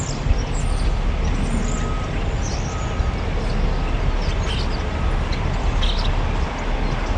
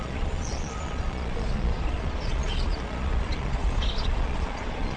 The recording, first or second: first